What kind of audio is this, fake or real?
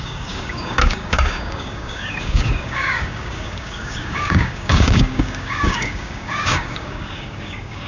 fake